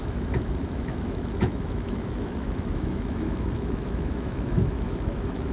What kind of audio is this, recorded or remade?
remade